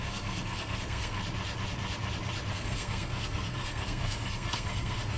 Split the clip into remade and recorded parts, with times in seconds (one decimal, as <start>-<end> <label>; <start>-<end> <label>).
0.0-1.2 remade; 1.2-2.5 recorded; 2.5-5.2 remade